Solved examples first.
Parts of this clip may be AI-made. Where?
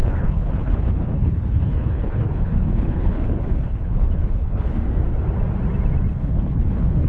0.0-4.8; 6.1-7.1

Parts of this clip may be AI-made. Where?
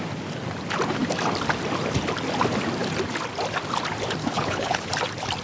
4.2-4.9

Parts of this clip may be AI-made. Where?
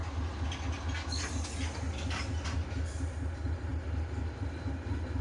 none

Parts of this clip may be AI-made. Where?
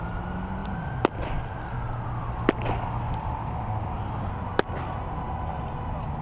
none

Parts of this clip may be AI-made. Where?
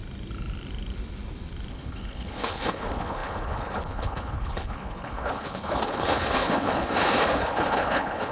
1.7-8.3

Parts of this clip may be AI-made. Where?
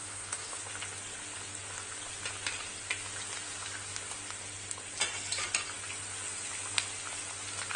0.0-0.6